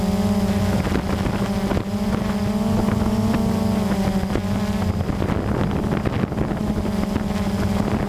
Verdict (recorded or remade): recorded